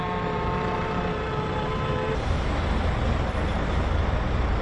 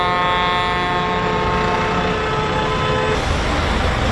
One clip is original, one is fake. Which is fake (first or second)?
first